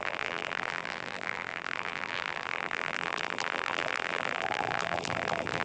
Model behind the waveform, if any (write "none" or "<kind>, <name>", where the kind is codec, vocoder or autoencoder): vocoder, BigVGAN v2